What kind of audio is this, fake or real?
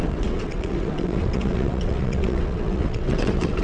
fake